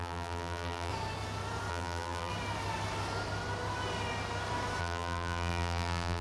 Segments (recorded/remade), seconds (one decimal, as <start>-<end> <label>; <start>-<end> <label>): 0.0-0.9 remade; 0.9-1.7 recorded; 1.7-2.3 remade; 2.3-4.8 recorded; 4.8-6.2 remade